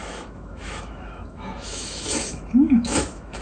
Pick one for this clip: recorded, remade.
remade